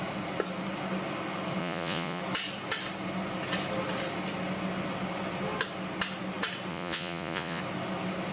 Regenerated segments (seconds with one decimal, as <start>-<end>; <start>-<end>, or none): 1.6-2.2; 6.7-7.6